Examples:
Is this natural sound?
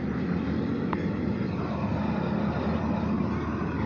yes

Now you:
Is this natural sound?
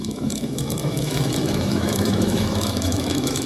no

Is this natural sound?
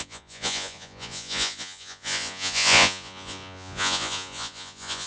no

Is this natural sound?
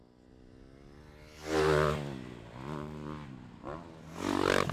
yes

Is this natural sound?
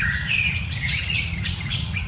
no